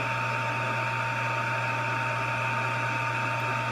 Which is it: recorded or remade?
recorded